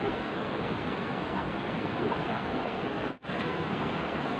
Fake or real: fake